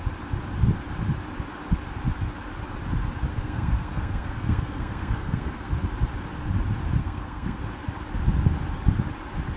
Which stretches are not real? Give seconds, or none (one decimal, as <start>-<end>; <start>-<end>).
3.3-5.7; 7.0-7.6